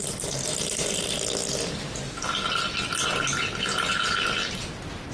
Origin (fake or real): real